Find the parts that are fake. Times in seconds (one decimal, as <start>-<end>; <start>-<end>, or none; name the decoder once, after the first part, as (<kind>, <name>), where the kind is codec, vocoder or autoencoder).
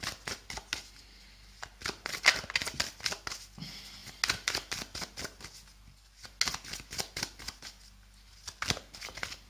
none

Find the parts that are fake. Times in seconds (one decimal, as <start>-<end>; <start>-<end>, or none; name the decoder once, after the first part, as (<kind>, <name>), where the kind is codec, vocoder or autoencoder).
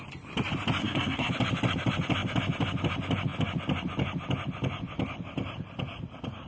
0.8-1.3 (codec, SNAC)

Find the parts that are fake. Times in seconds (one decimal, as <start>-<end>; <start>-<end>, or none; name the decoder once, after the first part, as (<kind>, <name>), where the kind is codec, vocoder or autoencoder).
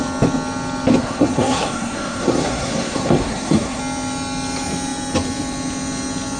1.0-3.8 (codec, SNAC)